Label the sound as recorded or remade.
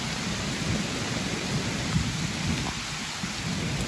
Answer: recorded